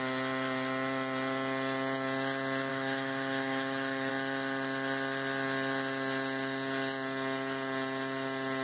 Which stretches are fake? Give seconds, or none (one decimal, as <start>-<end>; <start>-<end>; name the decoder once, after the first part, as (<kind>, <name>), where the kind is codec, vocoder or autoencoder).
2.7-4.1 (autoencoder, DAC-VAE)